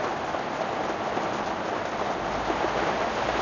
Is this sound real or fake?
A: real